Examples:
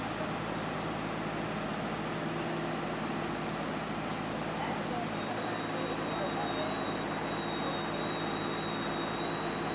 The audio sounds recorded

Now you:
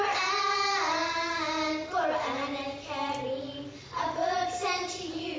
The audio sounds recorded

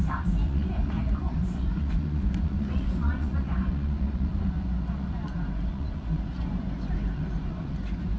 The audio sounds remade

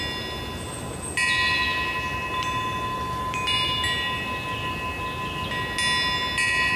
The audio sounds recorded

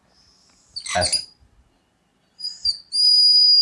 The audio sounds recorded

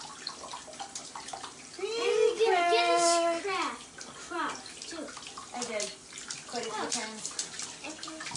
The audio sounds recorded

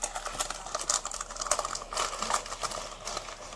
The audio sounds recorded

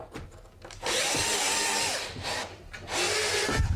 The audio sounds recorded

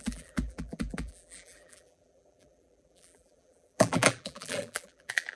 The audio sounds remade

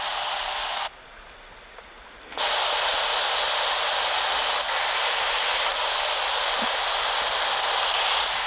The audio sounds recorded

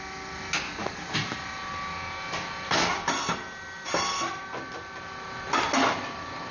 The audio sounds recorded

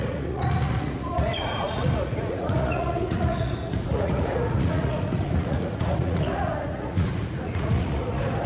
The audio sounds remade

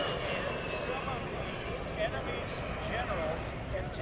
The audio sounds recorded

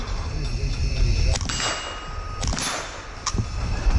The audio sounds recorded